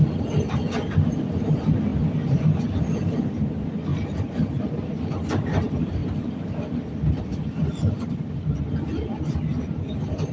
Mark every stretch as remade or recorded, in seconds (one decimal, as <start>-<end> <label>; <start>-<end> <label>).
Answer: 0.0-3.9 recorded; 3.9-5.6 remade; 5.6-10.3 recorded